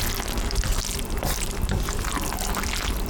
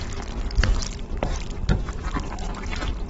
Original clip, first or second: first